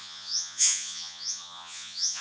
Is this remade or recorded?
remade